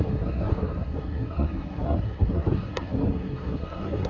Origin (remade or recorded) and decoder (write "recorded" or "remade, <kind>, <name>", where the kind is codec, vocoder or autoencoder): remade, codec, SNAC